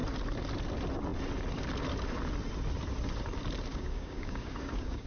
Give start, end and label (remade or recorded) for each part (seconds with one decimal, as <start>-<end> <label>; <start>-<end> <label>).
0.0-3.7 recorded; 3.7-5.1 remade